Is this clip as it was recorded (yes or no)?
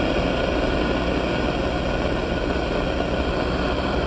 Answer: yes